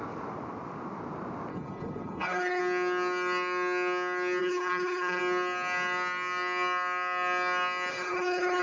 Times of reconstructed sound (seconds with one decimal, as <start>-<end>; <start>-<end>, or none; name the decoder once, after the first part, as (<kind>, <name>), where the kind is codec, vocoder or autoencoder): 1.5-2.6 (codec, HILCodec); 4.4-5.2; 7.9-8.6